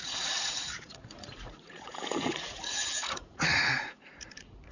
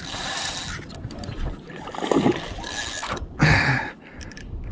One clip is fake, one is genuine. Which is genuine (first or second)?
second